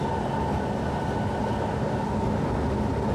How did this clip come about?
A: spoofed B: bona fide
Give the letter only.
B